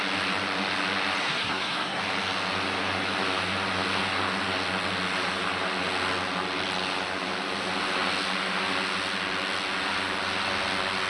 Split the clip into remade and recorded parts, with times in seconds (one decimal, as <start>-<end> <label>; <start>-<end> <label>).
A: 0.0-1.2 recorded; 1.2-2.0 remade; 2.0-11.1 recorded